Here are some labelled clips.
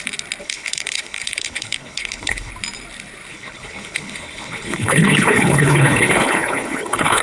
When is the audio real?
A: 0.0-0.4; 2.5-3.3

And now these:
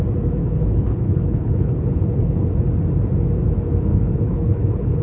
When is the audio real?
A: 0.0-0.4; 2.5-3.9

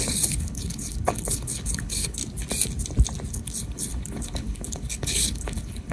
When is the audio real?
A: 2.2-3.3

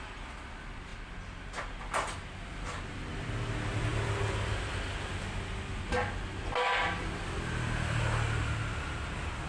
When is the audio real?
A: 0.0-9.5

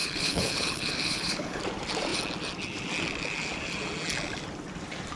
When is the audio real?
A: 1.6-5.2

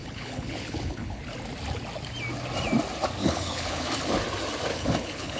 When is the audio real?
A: 1.2-3.2; 3.9-4.7

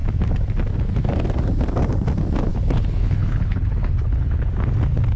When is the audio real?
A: 0.0-2.5; 4.5-5.2